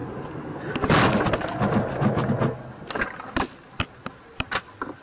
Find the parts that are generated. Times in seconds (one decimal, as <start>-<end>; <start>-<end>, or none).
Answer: none